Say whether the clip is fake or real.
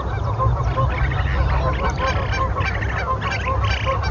real